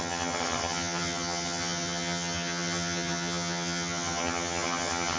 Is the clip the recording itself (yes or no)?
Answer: no